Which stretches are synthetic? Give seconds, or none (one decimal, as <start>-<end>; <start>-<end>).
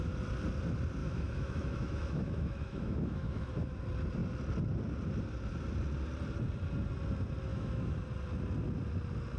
1.0-3.8; 7.5-8.0